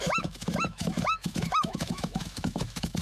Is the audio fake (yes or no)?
yes